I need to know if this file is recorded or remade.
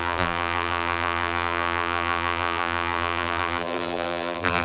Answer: remade